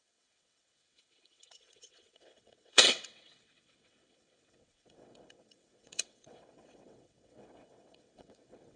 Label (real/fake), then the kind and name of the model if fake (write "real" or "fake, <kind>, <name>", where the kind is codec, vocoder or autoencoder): fake, vocoder, WaveNeXt